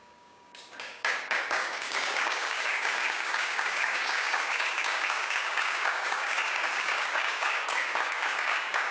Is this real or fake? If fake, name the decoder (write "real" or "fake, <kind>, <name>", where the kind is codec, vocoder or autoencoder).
fake, codec, DAC